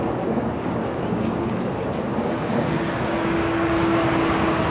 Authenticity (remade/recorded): remade